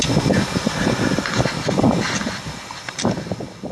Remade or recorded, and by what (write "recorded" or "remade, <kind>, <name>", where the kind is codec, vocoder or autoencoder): recorded